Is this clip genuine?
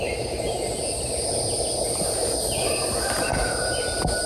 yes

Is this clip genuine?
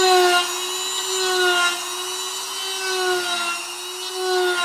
yes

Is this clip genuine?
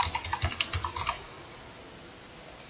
yes